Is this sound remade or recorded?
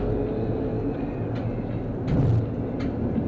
recorded